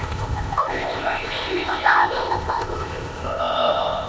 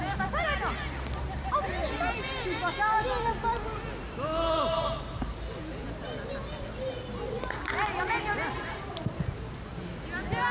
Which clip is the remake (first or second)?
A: first